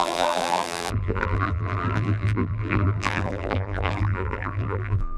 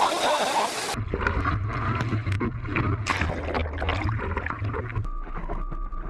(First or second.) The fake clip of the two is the first